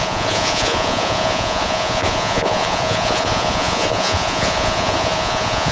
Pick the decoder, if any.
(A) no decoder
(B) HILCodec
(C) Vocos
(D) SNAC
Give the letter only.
C